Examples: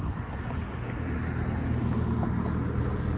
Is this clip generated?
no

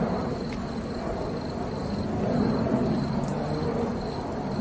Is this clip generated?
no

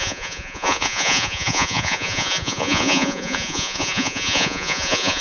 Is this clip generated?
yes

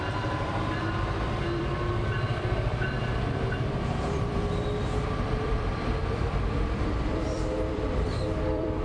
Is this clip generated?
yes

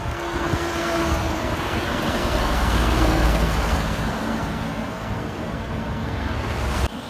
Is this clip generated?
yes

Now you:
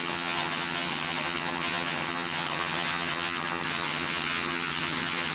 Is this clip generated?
yes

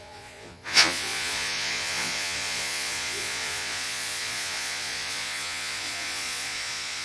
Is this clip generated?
yes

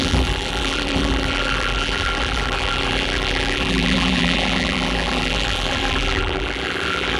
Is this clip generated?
yes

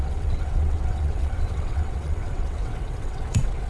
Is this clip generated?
yes